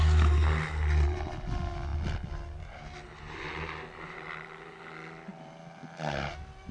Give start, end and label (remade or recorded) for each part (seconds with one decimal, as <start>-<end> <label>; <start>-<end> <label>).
0.0-6.7 recorded

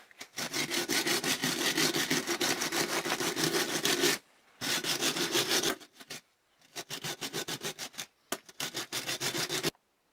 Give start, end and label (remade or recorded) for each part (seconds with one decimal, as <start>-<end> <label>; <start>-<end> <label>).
0.0-10.1 recorded

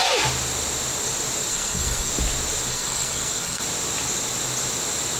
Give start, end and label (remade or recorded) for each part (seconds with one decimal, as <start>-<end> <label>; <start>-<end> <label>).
0.0-1.5 recorded; 1.5-2.1 remade; 2.1-2.7 recorded; 2.7-3.6 remade; 3.6-5.2 recorded

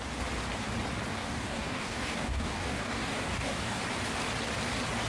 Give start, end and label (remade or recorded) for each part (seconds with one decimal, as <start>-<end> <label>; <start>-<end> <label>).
0.0-1.1 recorded; 1.1-3.8 remade; 3.8-5.1 recorded

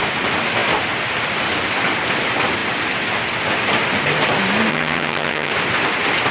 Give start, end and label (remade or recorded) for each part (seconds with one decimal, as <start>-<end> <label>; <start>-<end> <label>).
0.0-4.7 recorded; 4.7-5.5 remade; 5.5-6.3 recorded

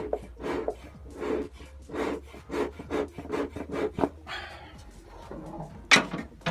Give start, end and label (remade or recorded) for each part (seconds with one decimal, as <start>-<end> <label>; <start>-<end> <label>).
0.0-6.5 recorded

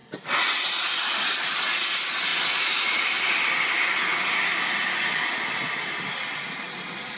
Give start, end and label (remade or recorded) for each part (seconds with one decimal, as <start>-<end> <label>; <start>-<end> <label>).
0.0-7.2 recorded